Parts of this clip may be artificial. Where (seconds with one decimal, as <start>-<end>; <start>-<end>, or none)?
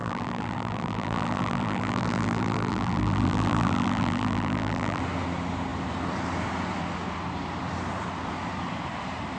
0.0-5.0